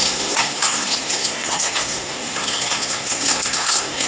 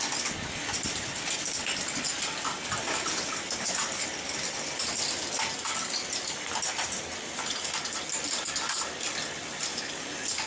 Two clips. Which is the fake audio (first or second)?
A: first